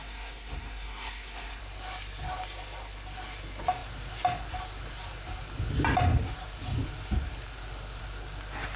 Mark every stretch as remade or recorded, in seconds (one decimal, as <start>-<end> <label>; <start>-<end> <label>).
0.0-1.6 remade; 1.6-8.8 recorded